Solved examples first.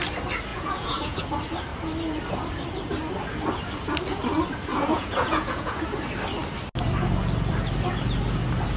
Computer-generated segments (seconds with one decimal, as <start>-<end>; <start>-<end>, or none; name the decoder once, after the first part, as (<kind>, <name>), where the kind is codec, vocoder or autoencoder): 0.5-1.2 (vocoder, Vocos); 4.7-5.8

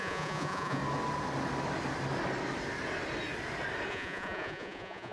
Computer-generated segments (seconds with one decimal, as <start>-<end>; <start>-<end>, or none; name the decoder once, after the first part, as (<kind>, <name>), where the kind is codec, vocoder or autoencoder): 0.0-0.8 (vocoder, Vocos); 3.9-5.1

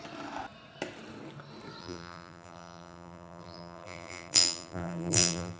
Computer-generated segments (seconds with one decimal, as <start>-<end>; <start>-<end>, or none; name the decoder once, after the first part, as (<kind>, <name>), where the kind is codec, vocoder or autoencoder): 1.8-5.6 (vocoder, BigVGAN v2)